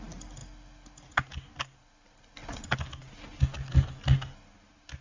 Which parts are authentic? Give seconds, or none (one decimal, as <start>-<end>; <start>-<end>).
0.0-5.0